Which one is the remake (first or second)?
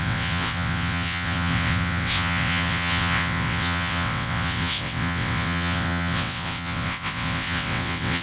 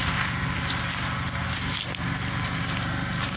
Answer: first